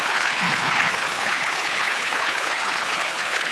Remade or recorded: remade